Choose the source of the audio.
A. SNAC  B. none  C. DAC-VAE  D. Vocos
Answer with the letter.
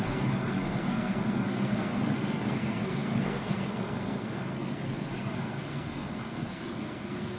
A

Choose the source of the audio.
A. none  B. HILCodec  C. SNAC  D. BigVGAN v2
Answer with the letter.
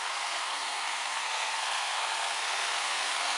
C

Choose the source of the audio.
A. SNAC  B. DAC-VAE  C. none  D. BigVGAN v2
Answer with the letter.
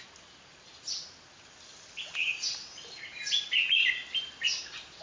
C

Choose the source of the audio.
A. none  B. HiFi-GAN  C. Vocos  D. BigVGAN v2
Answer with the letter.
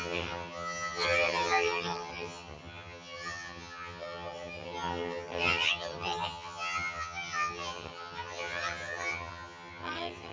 B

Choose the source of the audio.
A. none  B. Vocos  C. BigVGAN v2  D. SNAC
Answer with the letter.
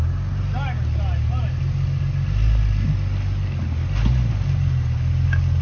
A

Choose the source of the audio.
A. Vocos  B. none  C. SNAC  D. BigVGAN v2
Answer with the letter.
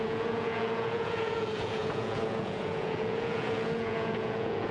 A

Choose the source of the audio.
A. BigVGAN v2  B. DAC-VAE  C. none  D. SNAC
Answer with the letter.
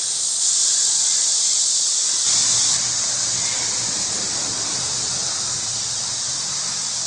C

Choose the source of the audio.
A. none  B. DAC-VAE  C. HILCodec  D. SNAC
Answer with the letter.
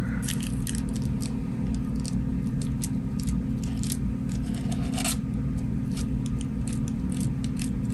A